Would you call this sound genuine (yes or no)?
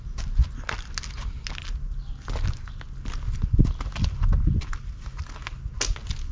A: yes